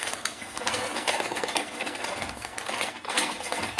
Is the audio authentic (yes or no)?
no